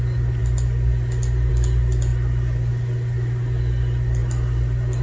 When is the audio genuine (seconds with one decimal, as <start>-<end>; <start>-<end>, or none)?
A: 0.0-5.0